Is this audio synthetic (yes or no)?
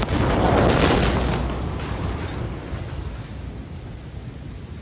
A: no